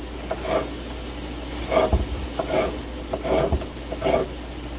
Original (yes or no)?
yes